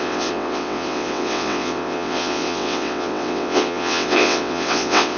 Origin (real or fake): fake